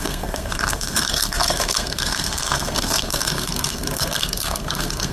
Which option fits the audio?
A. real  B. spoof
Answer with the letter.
B